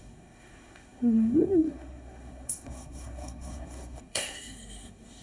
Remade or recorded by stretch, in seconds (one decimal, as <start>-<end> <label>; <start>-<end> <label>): 0.0-5.2 remade